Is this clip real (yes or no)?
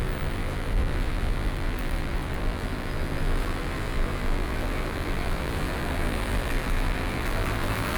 no